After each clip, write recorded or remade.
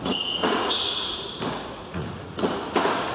remade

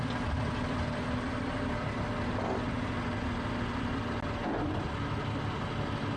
recorded